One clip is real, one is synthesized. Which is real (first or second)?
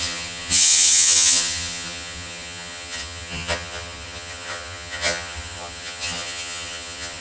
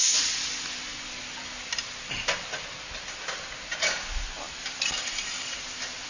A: second